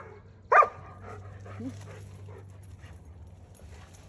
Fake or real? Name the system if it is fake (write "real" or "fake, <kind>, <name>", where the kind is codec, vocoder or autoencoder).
real